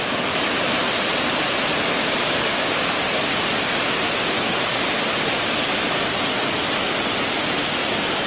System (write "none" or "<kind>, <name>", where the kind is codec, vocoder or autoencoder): none